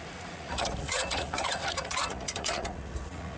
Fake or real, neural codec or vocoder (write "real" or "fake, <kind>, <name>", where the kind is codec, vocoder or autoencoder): fake, vocoder, Vocos